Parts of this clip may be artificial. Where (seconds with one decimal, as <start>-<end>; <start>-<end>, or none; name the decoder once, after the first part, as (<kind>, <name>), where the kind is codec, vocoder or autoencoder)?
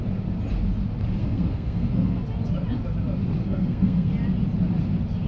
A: 1.2-2.2 (codec, SNAC); 3.4-4.1